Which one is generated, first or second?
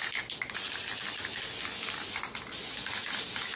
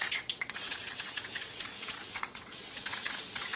second